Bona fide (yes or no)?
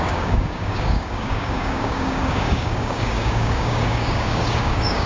no